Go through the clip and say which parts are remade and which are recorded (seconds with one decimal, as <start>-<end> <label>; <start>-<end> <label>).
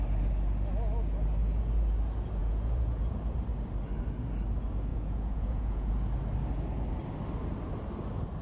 0.0-2.4 recorded; 2.4-3.2 remade; 3.2-4.9 recorded; 4.9-5.9 remade; 5.9-8.4 recorded